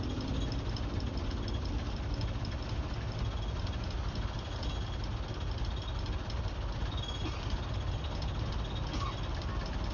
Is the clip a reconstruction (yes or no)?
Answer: no